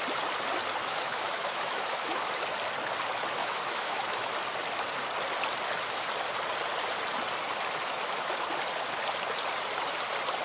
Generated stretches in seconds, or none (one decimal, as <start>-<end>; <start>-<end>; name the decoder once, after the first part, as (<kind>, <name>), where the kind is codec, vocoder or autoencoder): 0.8-2.3 (autoencoder, DAC-VAE); 3.4-4.4